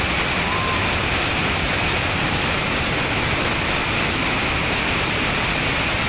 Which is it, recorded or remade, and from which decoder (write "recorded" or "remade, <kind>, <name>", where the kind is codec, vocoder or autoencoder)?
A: recorded